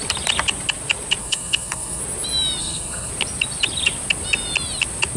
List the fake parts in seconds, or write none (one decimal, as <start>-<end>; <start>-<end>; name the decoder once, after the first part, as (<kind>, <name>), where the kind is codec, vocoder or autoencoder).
1.2-2.0 (codec, SNAC); 2.6-3.1